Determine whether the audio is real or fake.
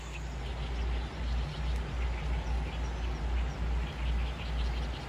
real